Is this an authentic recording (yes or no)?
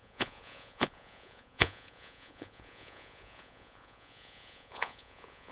no